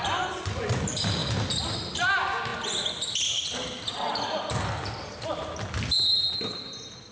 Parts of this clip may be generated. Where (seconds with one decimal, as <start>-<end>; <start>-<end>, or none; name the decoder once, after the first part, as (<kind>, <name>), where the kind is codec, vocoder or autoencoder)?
none